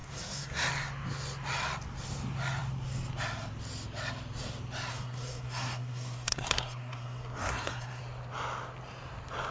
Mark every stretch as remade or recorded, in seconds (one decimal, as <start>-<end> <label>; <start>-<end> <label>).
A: 0.0-0.7 remade; 0.7-4.9 recorded; 4.9-8.0 remade; 8.0-9.5 recorded